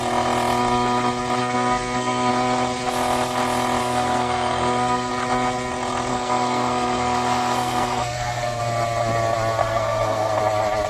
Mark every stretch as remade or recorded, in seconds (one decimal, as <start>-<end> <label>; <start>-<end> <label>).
0.0-1.4 recorded; 1.4-2.3 remade; 2.3-3.8 recorded; 3.8-5.1 remade; 5.1-6.1 recorded; 6.1-8.6 remade; 8.6-9.6 recorded; 9.6-10.4 remade; 10.4-10.9 recorded